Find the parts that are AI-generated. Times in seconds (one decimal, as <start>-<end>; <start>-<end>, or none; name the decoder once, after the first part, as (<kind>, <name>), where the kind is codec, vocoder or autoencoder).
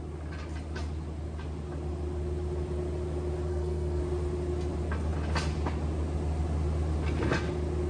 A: 3.5-4.0 (codec, SNAC)